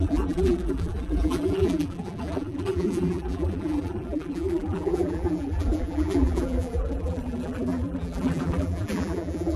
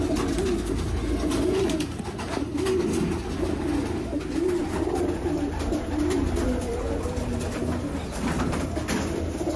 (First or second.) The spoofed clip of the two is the first